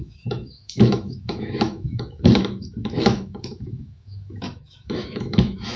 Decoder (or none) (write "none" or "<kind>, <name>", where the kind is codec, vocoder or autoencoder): autoencoder, DAC-VAE